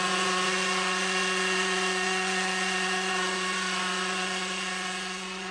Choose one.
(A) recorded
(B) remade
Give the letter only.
B